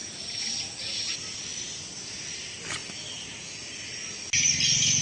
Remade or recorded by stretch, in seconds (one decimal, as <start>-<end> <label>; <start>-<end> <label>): 0.0-1.1 remade; 1.1-5.0 recorded